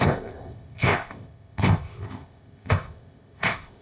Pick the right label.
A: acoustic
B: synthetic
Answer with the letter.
B